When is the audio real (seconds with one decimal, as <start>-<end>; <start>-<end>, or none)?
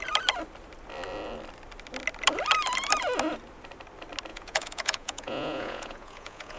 0.0-4.3